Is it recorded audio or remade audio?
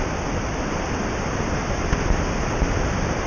recorded